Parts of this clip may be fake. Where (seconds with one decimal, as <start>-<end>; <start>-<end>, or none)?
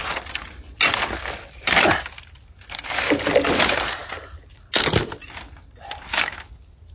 none